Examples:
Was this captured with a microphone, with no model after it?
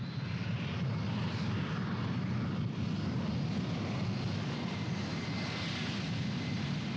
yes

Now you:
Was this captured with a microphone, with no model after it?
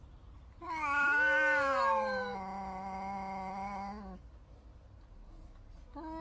yes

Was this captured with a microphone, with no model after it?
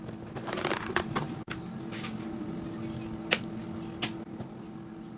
yes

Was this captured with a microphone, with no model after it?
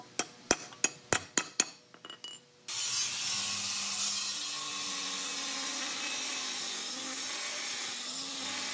yes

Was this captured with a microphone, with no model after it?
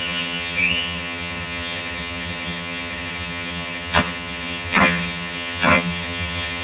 no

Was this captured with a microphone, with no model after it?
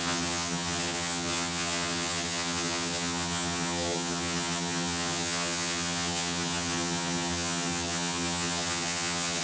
no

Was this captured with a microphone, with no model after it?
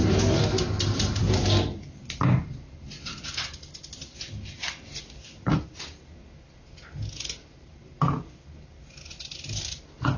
yes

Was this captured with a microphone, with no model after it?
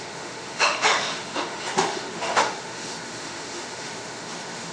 no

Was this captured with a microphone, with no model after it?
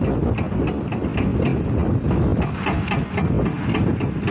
yes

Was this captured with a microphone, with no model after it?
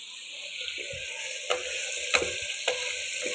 yes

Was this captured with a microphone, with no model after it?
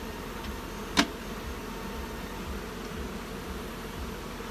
yes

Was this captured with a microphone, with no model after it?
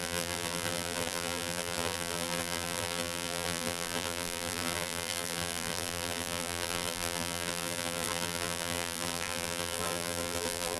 no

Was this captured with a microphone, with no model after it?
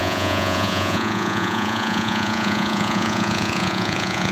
no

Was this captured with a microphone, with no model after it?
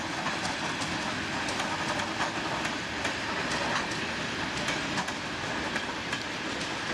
yes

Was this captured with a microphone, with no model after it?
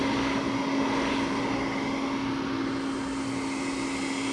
yes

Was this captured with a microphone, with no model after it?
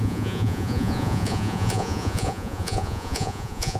no